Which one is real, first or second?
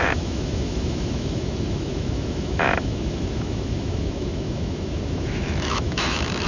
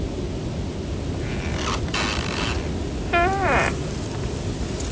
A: second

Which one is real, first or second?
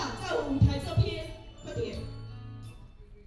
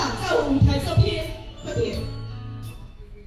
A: first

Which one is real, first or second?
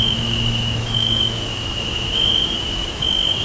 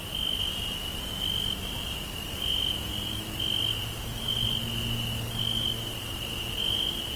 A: second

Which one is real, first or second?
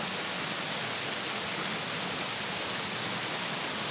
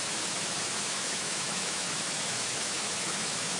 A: first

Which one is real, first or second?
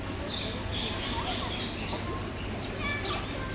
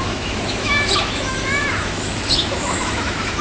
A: first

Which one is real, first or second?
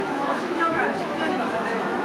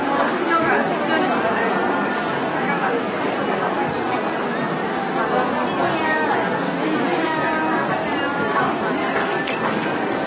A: second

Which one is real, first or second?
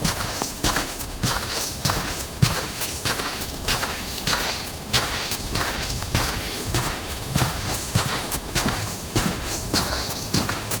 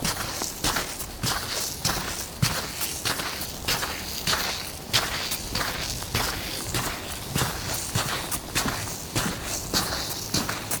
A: second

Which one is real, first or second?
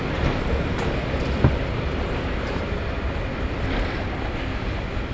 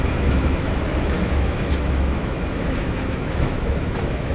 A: first